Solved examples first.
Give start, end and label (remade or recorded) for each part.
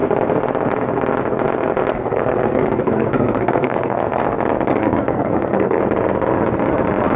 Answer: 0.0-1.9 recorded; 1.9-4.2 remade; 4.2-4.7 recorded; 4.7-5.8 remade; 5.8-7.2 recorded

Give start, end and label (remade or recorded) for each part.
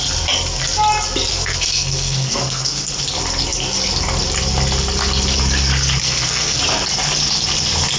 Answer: 0.0-1.3 recorded; 1.3-2.9 remade; 2.9-6.0 recorded; 6.0-6.6 remade; 6.6-8.0 recorded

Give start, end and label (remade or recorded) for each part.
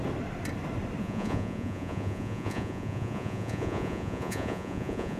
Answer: 0.0-1.0 recorded; 1.0-5.2 remade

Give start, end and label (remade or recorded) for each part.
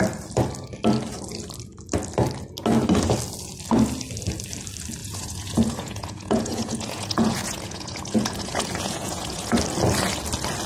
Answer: 0.0-5.0 recorded; 5.0-9.6 remade; 9.6-10.7 recorded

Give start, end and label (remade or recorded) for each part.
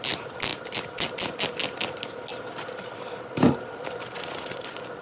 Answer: 0.0-5.0 recorded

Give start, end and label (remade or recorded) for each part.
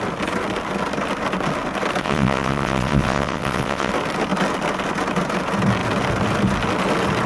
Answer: 0.0-2.0 recorded; 2.0-3.9 remade; 3.9-7.3 recorded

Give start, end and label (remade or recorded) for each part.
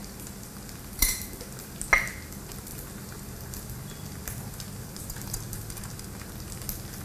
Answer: 0.0-7.0 recorded